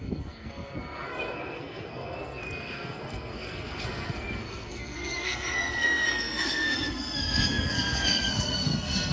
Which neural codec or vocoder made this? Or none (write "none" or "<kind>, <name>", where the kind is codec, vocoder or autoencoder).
codec, SNAC